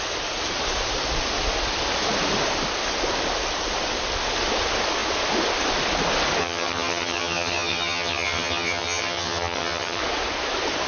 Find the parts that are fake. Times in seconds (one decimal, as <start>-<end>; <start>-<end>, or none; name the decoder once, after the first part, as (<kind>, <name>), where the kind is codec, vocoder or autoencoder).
6.4-10.0 (vocoder, HiFi-GAN)